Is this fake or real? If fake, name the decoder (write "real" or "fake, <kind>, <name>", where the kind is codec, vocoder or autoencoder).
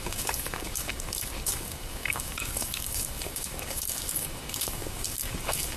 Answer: fake, codec, DAC